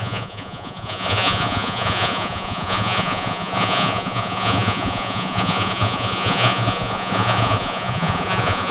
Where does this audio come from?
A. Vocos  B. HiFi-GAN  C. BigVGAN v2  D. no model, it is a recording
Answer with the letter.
A